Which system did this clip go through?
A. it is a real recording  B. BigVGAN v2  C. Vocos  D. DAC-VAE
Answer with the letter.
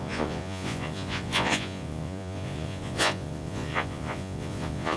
C